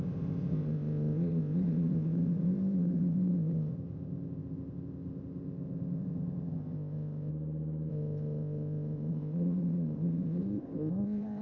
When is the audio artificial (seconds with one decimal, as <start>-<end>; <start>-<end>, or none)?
0.0-7.3; 7.9-11.4